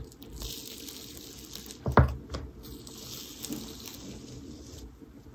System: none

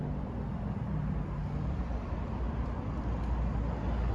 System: none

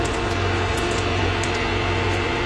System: vocoder, Vocos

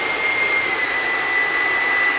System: none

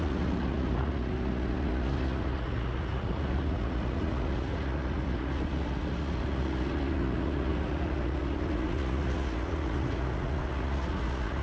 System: vocoder, Vocos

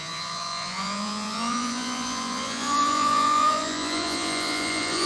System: vocoder, Vocos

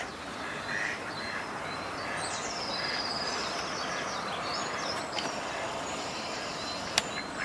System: none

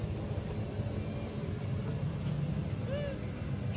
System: none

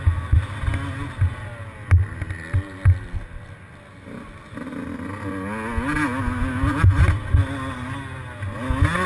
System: none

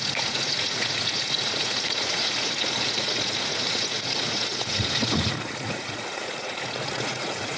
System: vocoder, Vocos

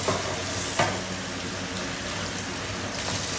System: none